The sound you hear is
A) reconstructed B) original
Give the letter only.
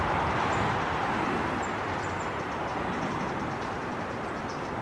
A